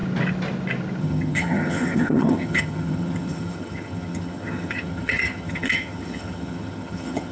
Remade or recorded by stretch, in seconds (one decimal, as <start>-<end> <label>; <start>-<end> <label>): 0.0-1.0 recorded; 1.0-7.3 remade